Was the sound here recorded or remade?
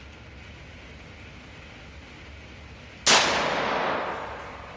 recorded